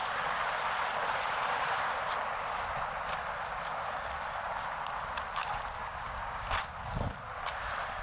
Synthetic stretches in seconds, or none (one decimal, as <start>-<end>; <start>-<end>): 5.8-6.7

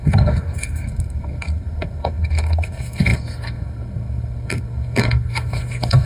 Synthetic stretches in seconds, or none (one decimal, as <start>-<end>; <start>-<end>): 0.0-6.1